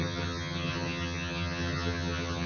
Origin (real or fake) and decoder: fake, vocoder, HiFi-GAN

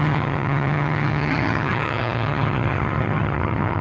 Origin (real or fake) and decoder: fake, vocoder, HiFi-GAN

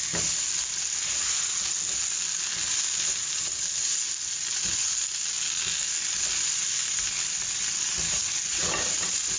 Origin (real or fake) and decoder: real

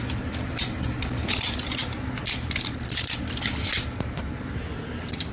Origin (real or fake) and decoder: real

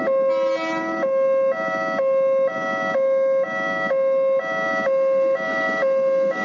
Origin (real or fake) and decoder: real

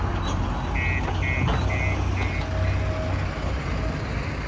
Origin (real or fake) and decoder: real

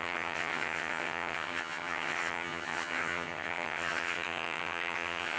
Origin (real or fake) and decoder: fake, vocoder, HiFi-GAN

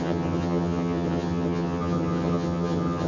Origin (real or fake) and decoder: fake, vocoder, HiFi-GAN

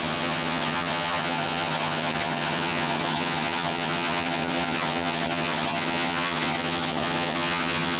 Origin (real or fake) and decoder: fake, vocoder, HiFi-GAN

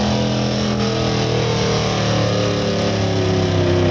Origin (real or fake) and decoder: real